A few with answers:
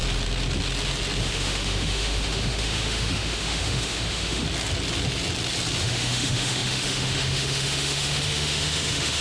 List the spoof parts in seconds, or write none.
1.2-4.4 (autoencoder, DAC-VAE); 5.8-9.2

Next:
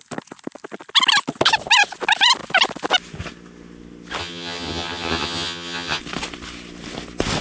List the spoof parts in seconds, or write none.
4.2-6.0 (vocoder, HiFi-GAN)

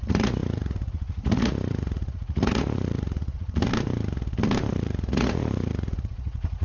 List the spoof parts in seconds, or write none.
0.0-3.7 (vocoder, Vocos); 4.7-6.6

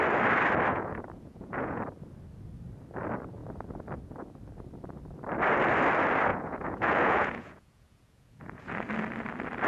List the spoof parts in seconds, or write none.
0.7-1.8 (vocoder, Vocos); 6.3-8.7

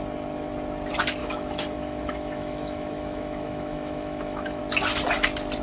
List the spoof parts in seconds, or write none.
1.2-4.6 (autoencoder, DAC-VAE)